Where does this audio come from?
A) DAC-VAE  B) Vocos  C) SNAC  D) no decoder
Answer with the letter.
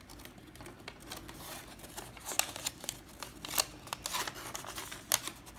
D